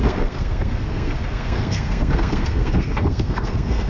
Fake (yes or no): yes